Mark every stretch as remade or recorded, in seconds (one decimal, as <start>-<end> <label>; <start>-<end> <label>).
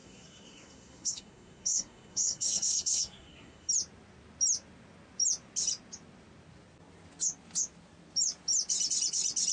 0.0-3.7 remade; 3.7-9.5 recorded